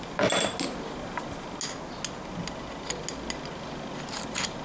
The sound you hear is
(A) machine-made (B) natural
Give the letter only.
B